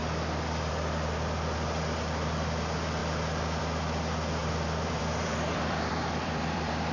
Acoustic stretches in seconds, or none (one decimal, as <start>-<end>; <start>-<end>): 0.0-4.4